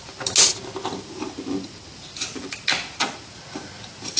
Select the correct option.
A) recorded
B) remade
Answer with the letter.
A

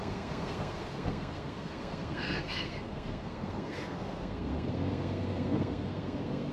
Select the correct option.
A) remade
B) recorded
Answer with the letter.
A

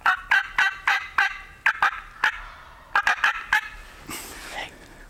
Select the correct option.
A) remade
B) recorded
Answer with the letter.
B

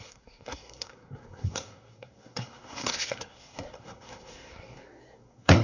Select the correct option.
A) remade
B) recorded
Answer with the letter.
A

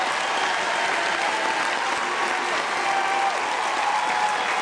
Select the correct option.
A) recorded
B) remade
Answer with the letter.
A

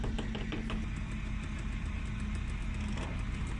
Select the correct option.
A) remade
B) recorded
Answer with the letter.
B